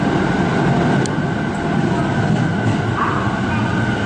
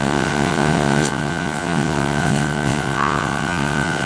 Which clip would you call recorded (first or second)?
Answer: first